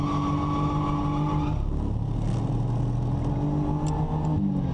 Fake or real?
real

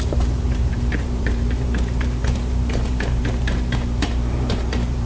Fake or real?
fake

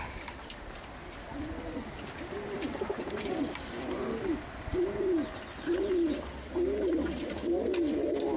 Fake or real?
fake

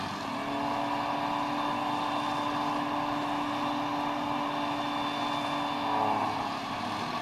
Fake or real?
real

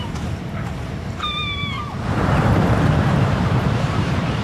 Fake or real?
fake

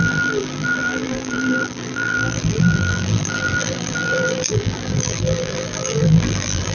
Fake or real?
fake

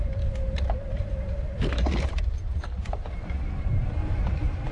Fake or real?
fake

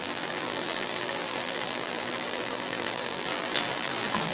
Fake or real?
fake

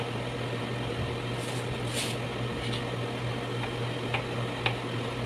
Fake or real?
real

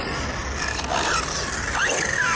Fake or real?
real